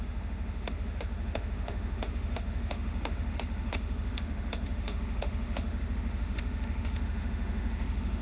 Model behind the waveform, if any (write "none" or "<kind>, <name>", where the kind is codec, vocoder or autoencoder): autoencoder, DAC-VAE